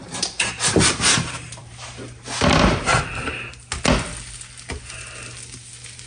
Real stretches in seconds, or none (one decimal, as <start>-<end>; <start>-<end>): 3.5-6.1